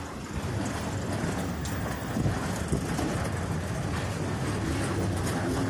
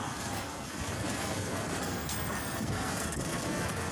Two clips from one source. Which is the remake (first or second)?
second